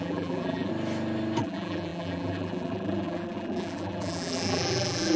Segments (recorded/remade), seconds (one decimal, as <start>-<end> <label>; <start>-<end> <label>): 0.0-0.7 remade; 0.7-1.4 recorded; 1.4-5.2 remade